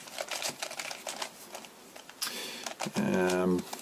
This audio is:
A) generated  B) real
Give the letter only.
B